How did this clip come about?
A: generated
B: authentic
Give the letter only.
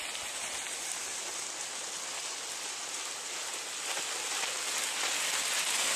B